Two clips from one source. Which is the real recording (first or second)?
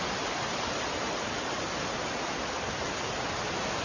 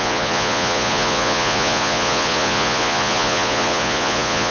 first